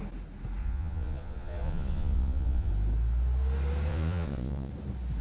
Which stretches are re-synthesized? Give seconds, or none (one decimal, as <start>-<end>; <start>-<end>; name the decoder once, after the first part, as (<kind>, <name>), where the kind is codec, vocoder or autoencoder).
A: 0.6-2.7 (vocoder, Vocos); 3.9-4.7